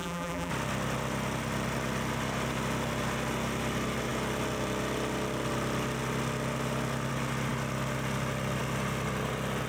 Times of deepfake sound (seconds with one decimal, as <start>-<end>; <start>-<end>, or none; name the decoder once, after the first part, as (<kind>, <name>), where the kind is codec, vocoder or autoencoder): 0.0-0.5 (vocoder, BigVGAN v2)